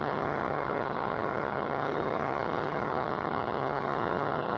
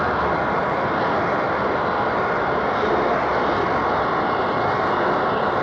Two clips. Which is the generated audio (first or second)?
first